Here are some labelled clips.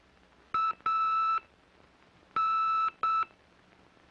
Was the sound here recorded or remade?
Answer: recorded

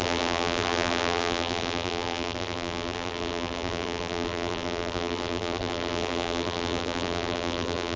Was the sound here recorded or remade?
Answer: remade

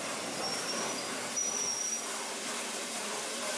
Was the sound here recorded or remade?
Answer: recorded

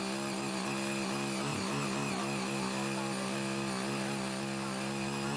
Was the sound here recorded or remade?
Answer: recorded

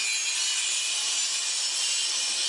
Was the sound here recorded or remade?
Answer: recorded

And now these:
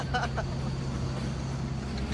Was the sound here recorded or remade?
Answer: recorded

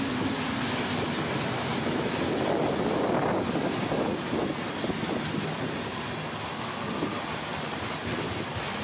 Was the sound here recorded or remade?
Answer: recorded